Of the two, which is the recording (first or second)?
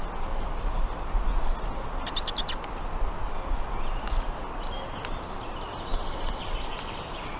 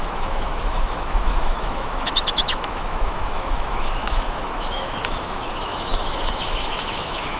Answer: first